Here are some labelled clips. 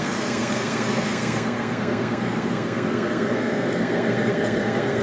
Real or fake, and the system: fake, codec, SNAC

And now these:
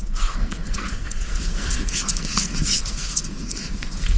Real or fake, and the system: fake, codec, SNAC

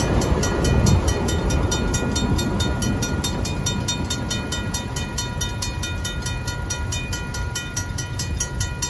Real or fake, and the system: real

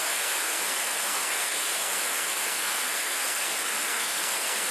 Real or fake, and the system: fake, codec, SNAC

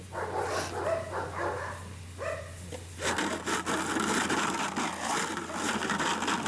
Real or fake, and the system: real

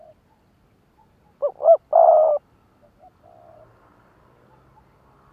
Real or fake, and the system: real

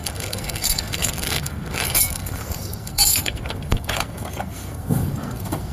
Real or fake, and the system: fake, codec, SNAC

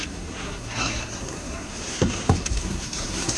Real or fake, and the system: fake, codec, SNAC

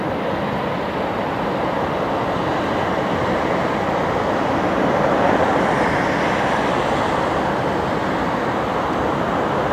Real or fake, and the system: real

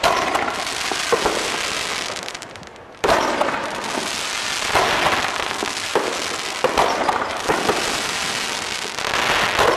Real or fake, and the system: real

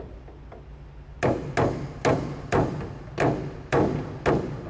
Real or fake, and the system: real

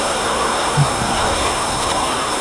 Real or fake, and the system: fake, codec, SNAC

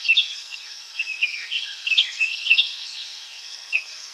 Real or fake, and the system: fake, codec, SNAC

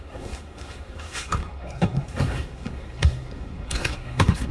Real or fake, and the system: fake, codec, SNAC